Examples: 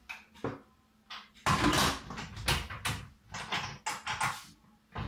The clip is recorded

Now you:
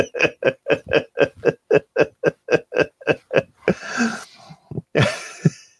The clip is recorded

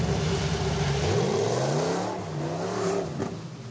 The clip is recorded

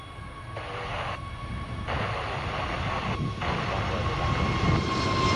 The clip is recorded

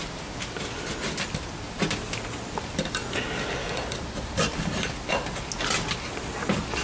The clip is recorded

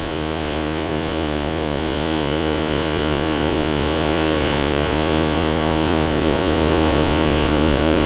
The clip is remade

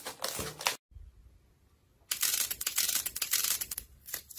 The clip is recorded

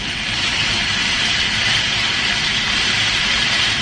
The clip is remade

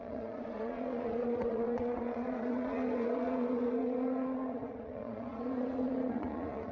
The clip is remade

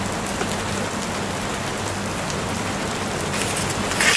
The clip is recorded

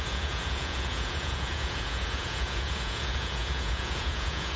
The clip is remade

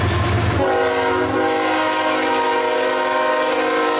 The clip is recorded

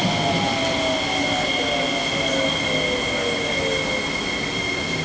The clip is recorded